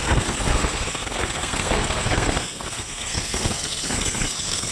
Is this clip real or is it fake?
fake